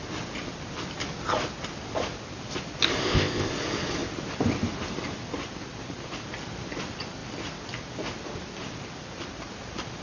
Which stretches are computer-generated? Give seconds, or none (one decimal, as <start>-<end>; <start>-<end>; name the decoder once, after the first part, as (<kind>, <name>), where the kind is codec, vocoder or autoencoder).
3.0-3.5 (codec, ZipCodec)